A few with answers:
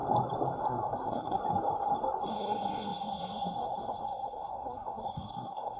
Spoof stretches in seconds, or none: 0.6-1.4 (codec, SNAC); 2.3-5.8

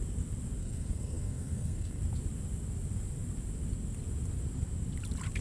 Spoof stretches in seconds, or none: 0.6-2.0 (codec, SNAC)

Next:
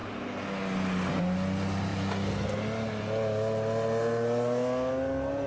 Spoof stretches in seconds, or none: none

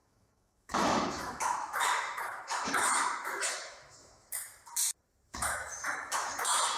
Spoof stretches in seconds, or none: 0.0-4.5 (autoencoder, DAC-VAE); 5.3-6.8

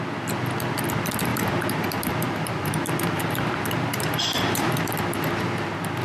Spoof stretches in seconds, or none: 1.3-4.9 (vocoder, BigVGAN v2)